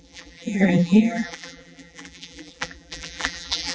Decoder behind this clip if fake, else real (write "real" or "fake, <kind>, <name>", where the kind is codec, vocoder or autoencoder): fake, vocoder, BigVGAN v2